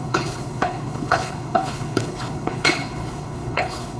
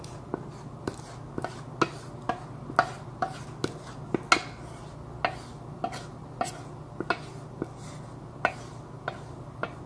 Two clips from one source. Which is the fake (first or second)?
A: first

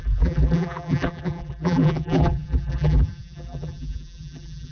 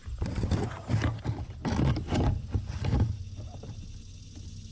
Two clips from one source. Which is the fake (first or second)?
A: first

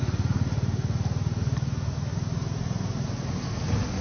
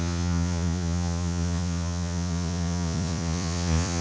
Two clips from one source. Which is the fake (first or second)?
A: second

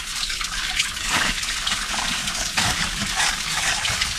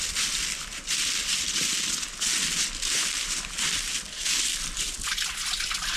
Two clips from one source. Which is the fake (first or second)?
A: first